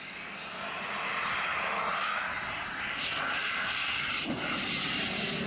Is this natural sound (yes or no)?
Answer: yes